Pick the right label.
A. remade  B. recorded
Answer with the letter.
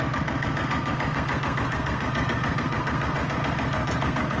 A